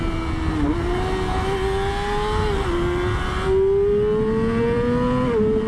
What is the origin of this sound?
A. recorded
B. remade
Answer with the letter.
A